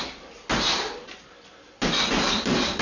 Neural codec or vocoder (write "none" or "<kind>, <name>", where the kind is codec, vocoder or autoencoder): none